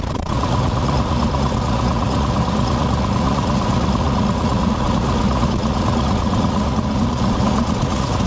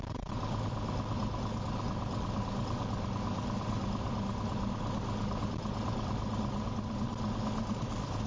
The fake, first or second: first